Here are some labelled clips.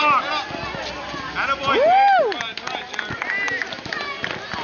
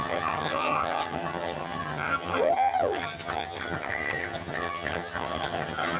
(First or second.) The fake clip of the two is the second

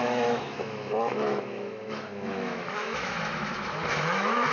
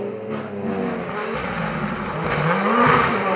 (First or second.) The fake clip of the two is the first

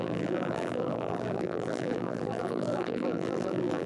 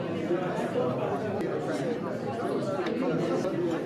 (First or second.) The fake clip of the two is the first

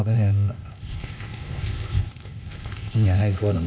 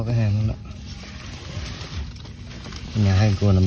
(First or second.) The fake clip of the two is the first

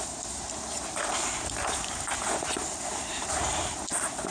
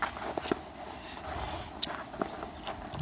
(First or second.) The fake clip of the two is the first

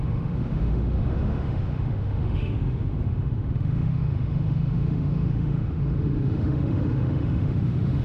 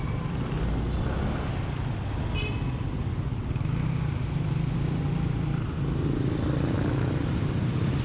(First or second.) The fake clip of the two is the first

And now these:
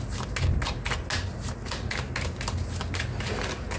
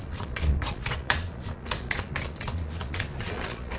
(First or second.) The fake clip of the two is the second